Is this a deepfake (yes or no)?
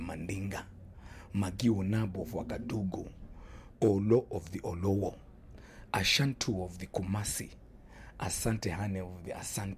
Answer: no